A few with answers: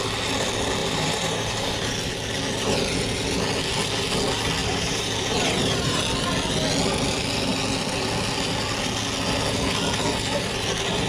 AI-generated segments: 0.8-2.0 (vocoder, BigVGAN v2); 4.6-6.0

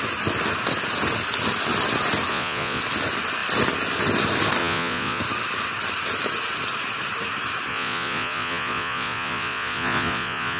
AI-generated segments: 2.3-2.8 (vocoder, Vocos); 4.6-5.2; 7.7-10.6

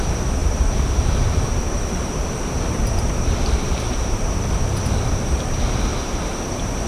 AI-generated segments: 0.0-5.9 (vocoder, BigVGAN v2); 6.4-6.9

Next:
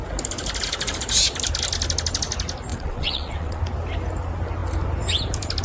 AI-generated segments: 2.7-3.6 (vocoder, WaveNeXt)